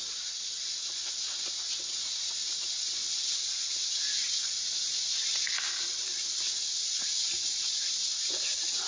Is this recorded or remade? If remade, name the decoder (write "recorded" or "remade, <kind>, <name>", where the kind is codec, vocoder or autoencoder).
recorded